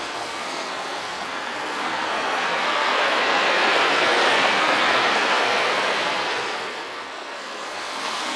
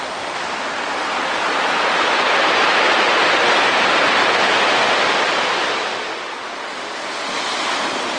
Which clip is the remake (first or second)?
first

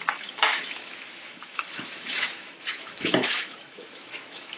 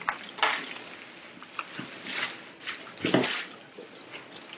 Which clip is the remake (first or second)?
first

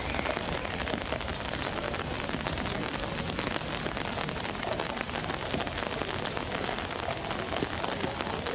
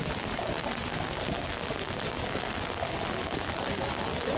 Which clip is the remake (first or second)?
first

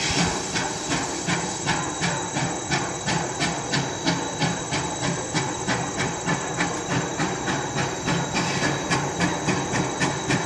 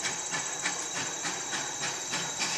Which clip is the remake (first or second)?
second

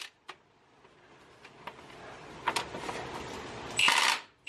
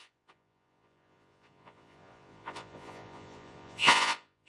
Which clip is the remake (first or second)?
second